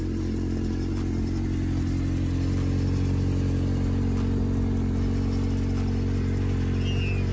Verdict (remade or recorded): recorded